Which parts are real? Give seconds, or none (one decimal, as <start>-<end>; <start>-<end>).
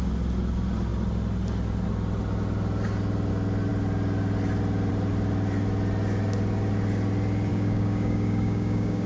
0.0-7.5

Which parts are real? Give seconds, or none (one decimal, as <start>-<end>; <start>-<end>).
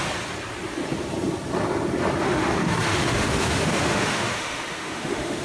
0.0-2.2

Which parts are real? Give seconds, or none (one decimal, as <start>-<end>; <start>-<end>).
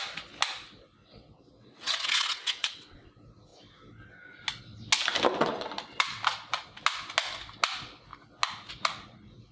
0.0-1.0; 3.1-5.4; 6.2-9.5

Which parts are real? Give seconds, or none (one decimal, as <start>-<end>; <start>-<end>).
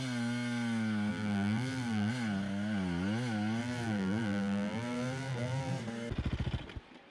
0.0-1.1; 2.1-3.6; 5.7-7.1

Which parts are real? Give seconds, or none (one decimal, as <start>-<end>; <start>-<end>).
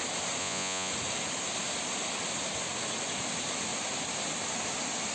0.0-0.4; 0.9-5.1